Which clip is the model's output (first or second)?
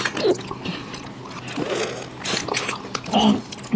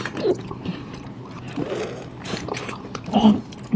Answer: second